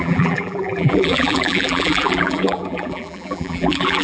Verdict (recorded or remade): remade